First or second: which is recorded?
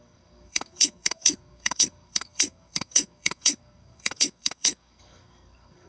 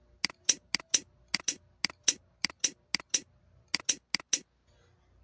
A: second